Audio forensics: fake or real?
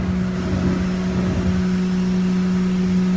real